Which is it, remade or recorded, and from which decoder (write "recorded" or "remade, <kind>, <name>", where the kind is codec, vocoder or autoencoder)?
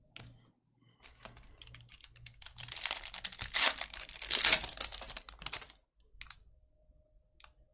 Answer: recorded